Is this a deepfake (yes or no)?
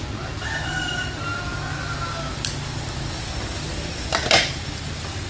no